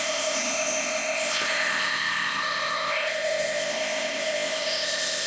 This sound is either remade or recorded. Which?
remade